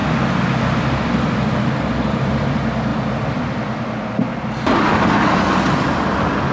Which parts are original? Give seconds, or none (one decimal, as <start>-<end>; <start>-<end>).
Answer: 2.3-2.9; 4.3-6.5